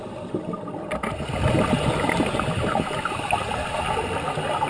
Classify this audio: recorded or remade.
recorded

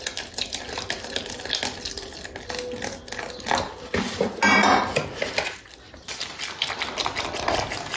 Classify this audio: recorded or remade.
recorded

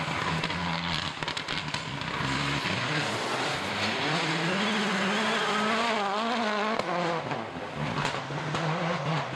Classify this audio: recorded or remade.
recorded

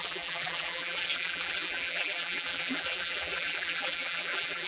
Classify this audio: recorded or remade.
remade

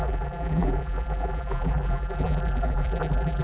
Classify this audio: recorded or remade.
remade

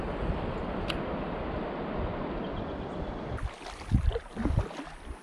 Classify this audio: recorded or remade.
recorded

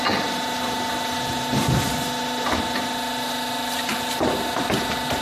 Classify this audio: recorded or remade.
recorded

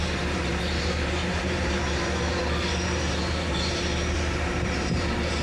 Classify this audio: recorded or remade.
remade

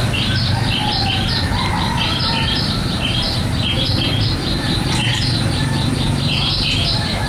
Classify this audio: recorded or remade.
remade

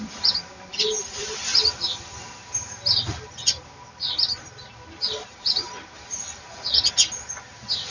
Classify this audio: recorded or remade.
recorded